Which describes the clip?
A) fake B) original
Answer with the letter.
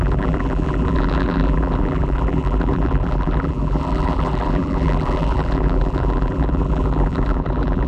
A